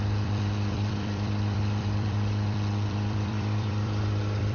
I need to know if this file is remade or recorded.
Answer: remade